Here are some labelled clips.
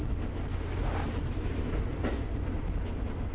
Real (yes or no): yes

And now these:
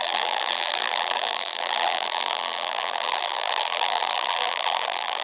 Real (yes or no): no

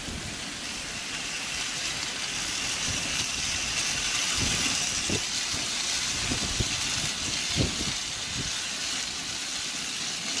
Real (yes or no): yes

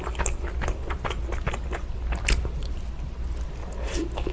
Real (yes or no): yes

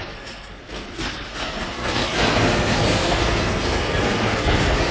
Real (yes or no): no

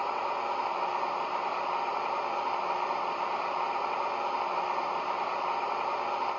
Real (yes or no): no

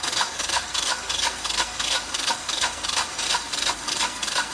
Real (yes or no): no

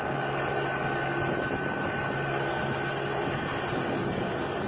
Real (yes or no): yes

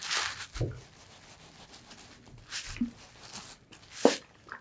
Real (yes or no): yes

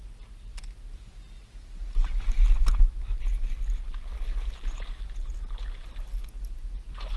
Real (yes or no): yes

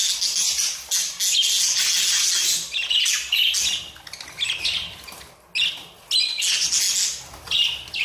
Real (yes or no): yes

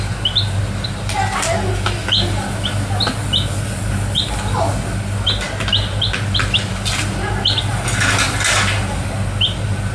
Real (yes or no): yes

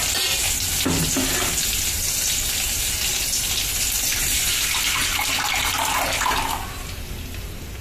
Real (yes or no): yes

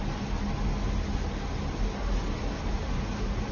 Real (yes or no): yes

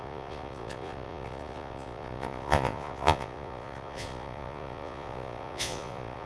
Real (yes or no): no